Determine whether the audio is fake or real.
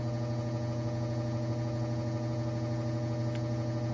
real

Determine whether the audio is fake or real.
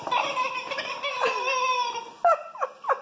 real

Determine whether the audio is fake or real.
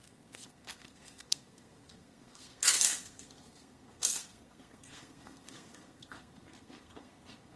fake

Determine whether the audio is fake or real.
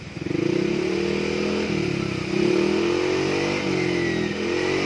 real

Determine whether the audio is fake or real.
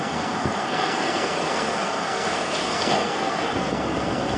fake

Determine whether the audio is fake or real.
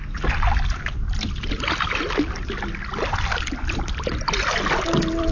real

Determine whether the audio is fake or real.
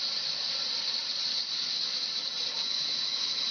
real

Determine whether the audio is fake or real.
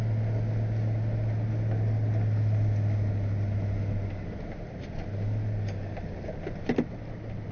real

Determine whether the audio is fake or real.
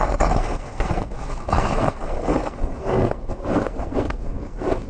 fake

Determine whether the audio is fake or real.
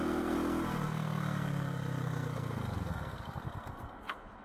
fake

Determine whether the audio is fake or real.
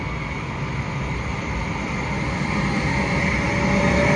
real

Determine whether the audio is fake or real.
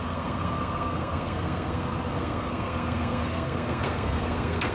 fake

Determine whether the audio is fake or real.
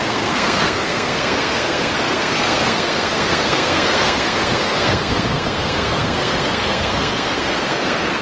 fake